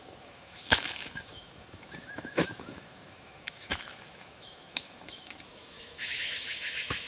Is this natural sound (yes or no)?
no